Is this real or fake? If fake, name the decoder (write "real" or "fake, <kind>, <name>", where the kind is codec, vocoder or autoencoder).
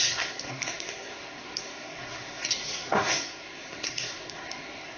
fake, codec, SNAC